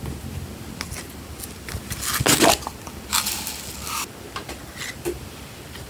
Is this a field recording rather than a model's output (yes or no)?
yes